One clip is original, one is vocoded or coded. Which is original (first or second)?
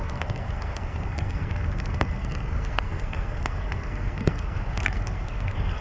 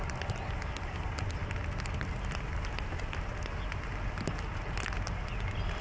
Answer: second